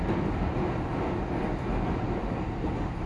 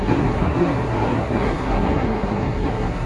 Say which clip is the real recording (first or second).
first